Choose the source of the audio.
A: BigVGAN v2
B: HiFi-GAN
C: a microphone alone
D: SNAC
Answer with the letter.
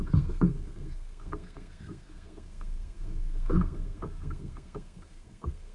D